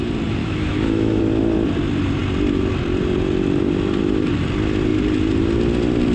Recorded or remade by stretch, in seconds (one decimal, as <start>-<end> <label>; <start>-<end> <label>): 0.0-0.4 recorded; 0.4-1.2 remade; 1.2-6.1 recorded